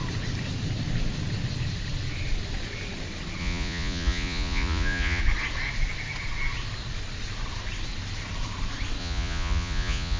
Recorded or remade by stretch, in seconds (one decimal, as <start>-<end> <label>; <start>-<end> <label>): 0.0-3.4 recorded; 3.4-5.2 remade; 5.2-9.0 recorded; 9.0-10.2 remade